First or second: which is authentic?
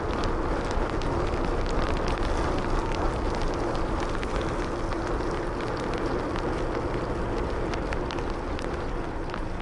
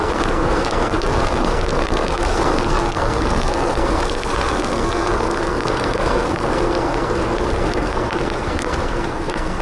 first